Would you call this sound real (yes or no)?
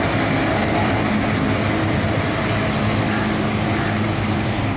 yes